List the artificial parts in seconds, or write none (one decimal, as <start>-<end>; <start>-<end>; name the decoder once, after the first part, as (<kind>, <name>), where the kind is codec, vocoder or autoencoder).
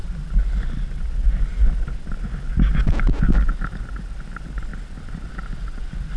none